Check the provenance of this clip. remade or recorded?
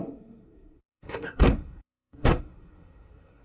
remade